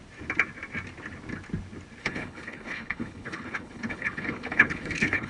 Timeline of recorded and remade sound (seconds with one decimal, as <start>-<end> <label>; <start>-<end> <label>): 0.0-2.0 recorded; 2.0-5.3 remade